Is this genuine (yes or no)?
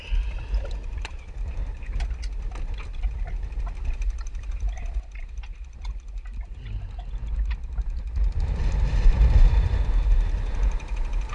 yes